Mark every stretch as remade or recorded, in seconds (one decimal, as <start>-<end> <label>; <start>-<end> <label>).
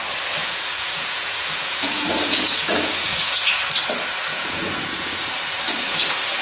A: 0.0-0.4 recorded; 0.4-3.7 remade; 3.7-4.3 recorded; 4.3-5.2 remade; 5.2-6.4 recorded